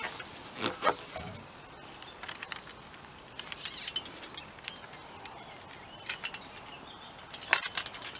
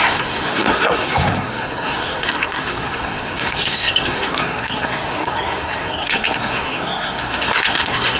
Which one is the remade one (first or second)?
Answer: second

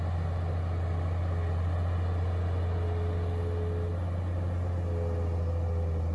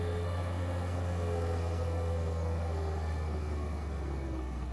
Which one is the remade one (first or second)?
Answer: second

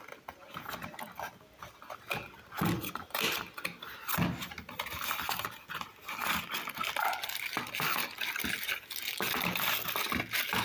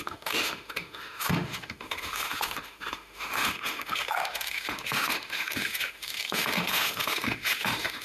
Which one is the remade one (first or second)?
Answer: second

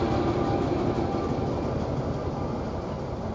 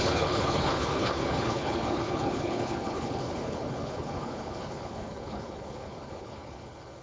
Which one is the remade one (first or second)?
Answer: second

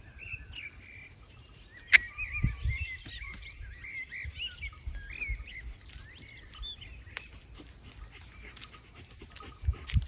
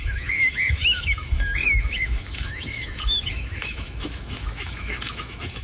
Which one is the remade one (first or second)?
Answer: second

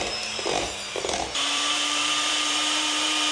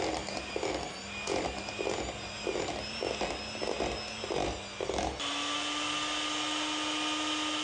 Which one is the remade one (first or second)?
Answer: first